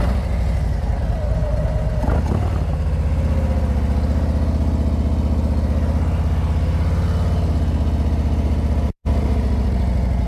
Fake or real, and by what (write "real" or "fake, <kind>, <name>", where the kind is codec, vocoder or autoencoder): real